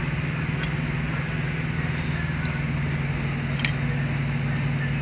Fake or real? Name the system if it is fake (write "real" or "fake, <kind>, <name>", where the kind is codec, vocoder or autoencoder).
real